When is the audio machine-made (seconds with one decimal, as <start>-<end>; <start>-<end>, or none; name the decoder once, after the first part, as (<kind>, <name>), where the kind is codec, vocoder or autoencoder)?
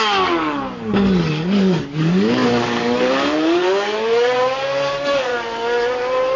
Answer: 0.0-5.3 (codec, DAC)